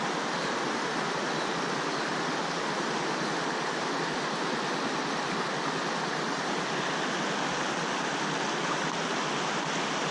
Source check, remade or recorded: recorded